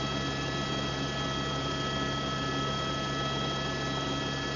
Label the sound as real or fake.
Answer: real